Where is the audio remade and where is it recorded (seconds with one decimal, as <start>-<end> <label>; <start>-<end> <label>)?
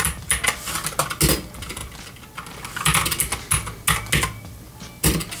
0.0-5.4 recorded